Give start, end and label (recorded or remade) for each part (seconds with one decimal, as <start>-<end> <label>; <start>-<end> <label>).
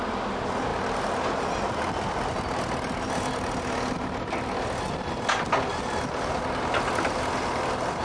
0.0-8.0 recorded